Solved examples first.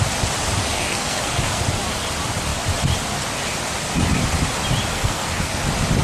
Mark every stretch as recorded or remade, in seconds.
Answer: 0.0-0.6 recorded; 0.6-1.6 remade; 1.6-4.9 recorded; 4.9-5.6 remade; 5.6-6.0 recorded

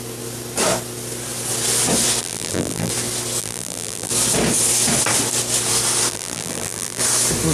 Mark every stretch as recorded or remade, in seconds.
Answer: 0.0-2.2 recorded; 2.2-2.9 remade; 2.9-3.4 recorded; 3.4-4.1 remade; 4.1-6.1 recorded; 6.1-7.0 remade; 7.0-7.5 recorded

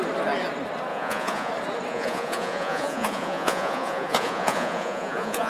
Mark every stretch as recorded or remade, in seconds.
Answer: 0.0-0.9 recorded; 0.9-1.5 remade; 1.5-1.9 recorded; 1.9-5.5 remade